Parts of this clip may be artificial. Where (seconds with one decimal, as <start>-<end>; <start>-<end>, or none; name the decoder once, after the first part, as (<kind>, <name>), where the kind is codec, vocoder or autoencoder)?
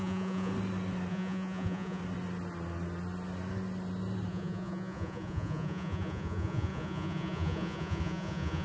0.0-0.5 (vocoder, Vocos); 1.1-2.0; 4.3-8.6